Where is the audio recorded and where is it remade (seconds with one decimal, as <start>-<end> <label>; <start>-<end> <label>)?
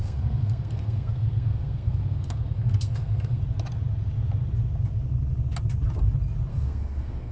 0.0-3.4 remade; 3.4-6.5 recorded; 6.5-7.3 remade